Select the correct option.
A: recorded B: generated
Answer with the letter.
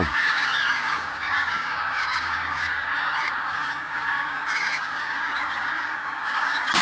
B